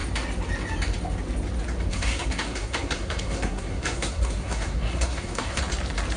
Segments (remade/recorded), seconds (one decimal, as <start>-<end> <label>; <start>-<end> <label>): 0.0-1.9 recorded; 1.9-5.6 remade; 5.6-6.2 recorded